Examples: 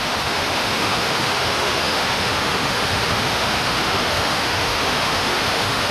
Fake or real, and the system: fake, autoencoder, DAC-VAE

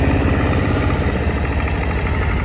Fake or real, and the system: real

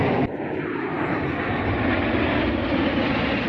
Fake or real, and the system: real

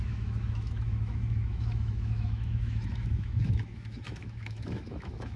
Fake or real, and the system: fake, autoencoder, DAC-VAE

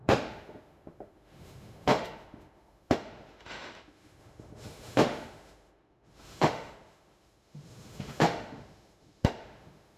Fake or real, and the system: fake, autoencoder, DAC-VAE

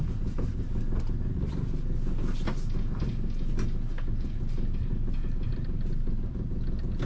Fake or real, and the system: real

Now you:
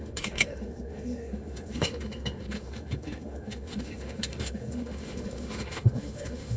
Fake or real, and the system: fake, autoencoder, DAC-VAE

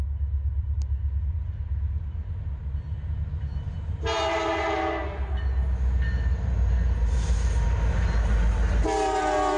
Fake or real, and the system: real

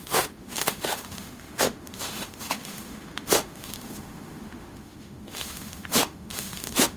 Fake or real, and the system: fake, autoencoder, DAC-VAE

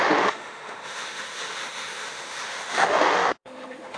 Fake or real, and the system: fake, autoencoder, DAC-VAE